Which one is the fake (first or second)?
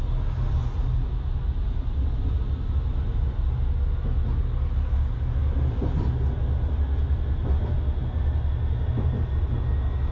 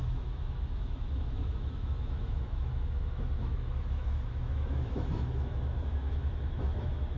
second